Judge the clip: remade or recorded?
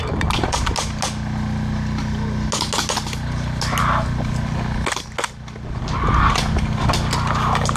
recorded